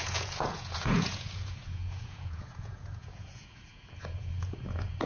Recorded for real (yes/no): no